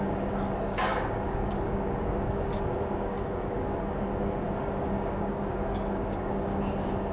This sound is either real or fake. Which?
fake